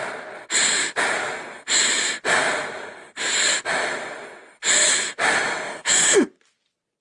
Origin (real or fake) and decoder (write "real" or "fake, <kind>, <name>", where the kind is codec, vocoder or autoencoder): real